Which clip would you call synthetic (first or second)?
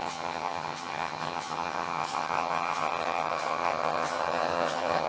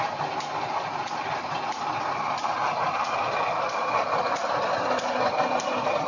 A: first